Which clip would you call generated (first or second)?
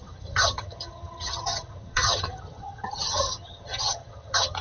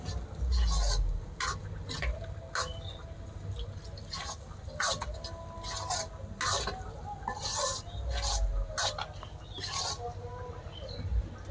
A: first